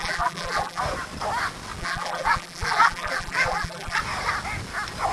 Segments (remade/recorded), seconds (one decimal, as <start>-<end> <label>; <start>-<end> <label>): 0.0-0.8 remade; 0.8-1.8 recorded; 1.8-4.0 remade; 4.0-5.1 recorded